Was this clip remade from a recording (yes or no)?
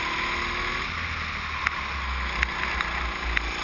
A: no